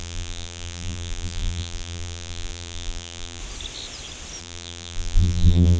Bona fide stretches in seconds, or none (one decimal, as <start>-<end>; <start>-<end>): 3.4-4.4